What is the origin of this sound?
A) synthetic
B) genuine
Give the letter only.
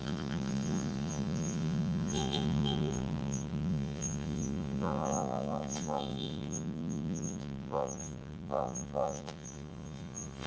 A